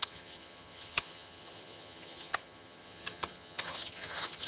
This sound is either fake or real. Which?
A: fake